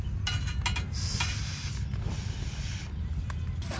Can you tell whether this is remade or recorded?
recorded